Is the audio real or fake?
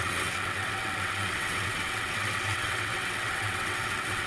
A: fake